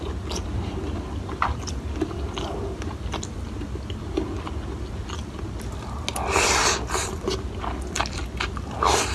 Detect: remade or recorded recorded